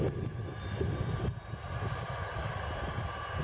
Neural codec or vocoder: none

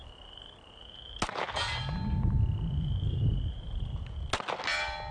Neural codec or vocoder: none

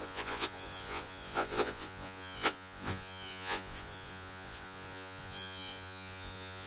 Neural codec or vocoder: vocoder, Vocos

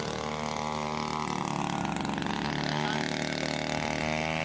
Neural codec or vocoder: none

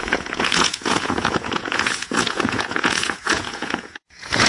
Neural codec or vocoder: vocoder, Vocos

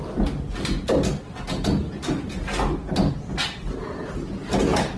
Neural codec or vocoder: none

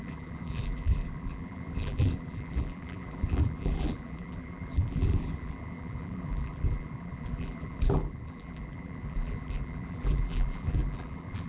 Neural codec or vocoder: vocoder, BigVGAN v2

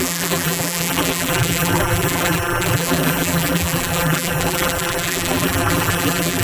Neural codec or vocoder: vocoder, BigVGAN v2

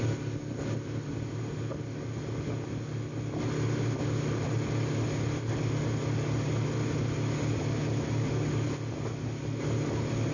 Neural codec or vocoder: none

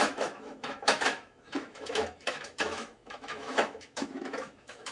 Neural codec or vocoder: autoencoder, DAC-VAE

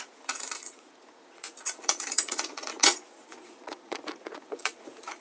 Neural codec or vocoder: vocoder, Vocos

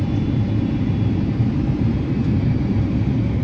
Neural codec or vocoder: vocoder, BigVGAN v2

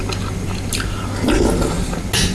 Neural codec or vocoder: none